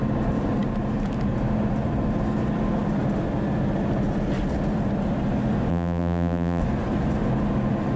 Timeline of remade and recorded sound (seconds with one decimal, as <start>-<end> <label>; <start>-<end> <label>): 0.0-5.7 recorded; 5.7-6.6 remade; 6.6-8.0 recorded